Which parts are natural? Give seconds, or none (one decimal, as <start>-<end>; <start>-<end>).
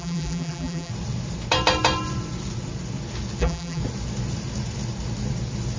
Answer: 0.9-3.4; 3.8-5.8